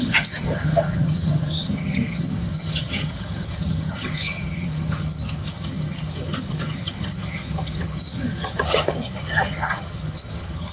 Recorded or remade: remade